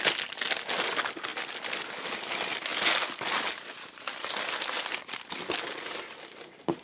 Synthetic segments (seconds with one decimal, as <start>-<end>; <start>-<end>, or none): none